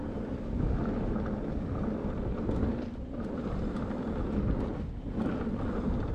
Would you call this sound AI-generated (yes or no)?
no